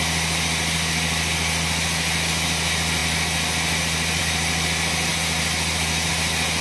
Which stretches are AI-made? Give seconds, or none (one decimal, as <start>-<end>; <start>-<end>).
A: none